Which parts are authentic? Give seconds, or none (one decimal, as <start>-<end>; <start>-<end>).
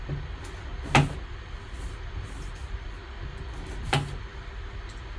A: 0.0-5.2